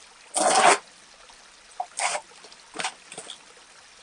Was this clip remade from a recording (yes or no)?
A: no